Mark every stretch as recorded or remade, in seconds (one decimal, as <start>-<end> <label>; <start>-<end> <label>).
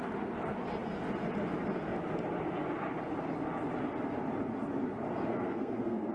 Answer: 0.0-5.3 recorded; 5.3-6.1 remade